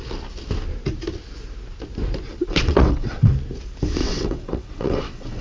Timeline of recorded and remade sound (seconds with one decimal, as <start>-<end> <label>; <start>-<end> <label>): 0.0-2.3 recorded; 2.3-3.3 remade; 3.3-4.0 recorded; 4.0-5.4 remade